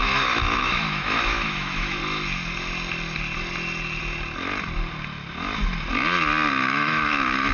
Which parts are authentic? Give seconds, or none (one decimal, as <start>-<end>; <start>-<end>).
2.0-6.5

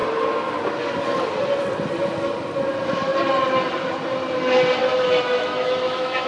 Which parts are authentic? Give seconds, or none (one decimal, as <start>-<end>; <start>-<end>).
0.0-4.8

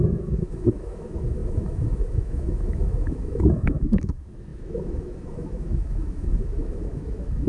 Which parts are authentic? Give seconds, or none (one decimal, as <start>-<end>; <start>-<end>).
none

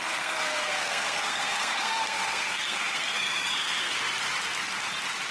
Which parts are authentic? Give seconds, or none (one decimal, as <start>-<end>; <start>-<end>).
3.9-5.3